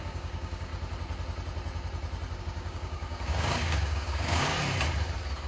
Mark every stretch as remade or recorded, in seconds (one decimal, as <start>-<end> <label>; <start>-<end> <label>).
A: 0.0-0.7 remade; 0.7-2.4 recorded; 2.4-4.5 remade; 4.5-5.5 recorded